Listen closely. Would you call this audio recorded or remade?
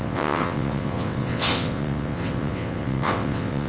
remade